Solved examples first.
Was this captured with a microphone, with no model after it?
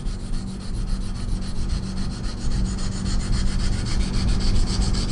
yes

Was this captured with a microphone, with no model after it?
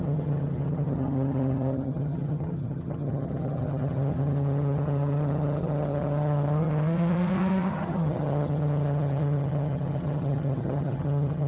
no